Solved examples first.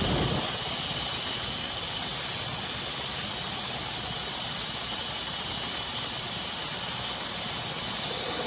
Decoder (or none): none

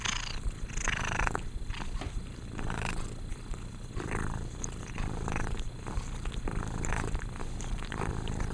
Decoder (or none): vocoder, BigVGAN v2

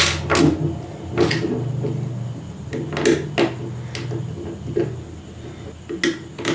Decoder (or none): none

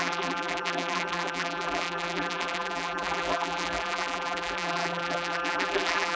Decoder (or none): vocoder, BigVGAN v2